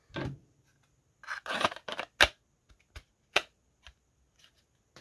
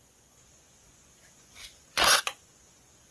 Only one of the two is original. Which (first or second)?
first